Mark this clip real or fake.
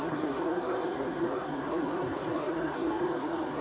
fake